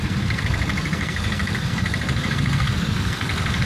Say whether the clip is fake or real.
fake